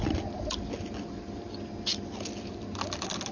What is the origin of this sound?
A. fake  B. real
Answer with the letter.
B